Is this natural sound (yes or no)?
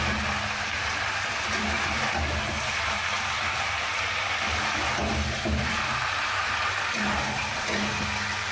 yes